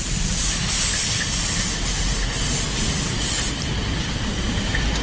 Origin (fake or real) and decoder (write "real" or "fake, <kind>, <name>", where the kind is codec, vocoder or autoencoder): real